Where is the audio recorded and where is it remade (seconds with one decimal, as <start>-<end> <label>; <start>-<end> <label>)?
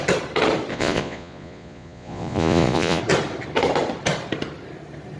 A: 0.0-0.7 recorded; 0.7-3.0 remade; 3.0-5.2 recorded